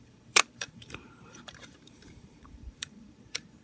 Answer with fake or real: fake